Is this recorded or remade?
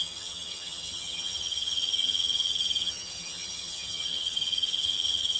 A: remade